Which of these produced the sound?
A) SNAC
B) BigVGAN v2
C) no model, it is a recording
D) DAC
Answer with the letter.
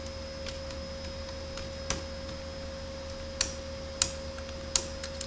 C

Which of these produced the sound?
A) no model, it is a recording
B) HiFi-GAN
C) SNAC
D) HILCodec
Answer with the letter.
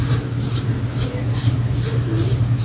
A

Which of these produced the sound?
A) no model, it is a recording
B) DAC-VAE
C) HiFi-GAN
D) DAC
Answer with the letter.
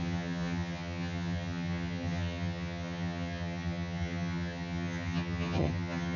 C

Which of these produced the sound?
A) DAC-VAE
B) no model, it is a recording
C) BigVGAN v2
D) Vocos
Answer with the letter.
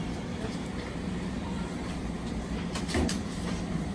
C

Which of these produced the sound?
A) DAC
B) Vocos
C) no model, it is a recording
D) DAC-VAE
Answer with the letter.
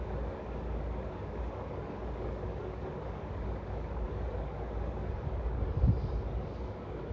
A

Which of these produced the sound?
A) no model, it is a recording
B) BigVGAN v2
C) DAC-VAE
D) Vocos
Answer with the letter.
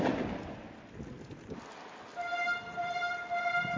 A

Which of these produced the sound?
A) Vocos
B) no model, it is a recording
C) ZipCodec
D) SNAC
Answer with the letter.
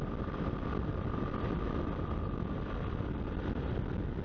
B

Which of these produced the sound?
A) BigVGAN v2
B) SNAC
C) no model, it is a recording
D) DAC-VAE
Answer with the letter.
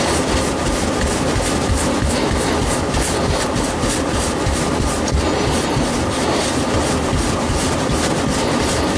C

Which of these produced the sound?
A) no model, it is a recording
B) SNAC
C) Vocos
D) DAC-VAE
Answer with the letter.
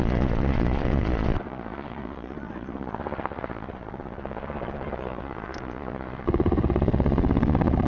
C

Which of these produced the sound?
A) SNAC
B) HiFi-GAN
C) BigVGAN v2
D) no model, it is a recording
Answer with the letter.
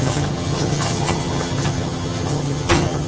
B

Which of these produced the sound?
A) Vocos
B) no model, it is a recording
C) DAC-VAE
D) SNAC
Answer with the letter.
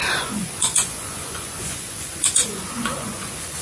A